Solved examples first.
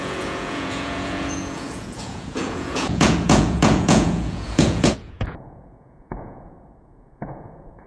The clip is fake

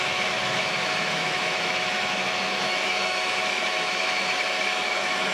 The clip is fake